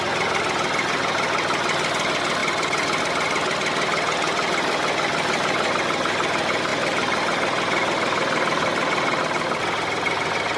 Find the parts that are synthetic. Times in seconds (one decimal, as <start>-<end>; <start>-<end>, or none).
none